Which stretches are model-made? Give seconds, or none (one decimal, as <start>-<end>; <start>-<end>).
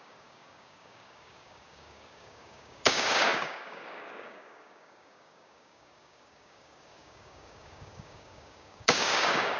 0.0-9.6